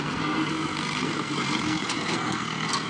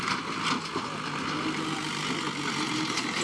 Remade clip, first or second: first